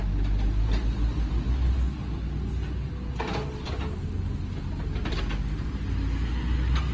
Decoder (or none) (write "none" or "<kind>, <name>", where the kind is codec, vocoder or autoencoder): none